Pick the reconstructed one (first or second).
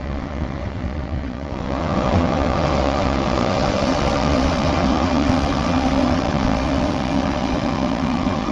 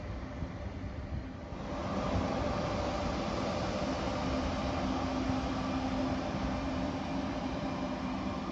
first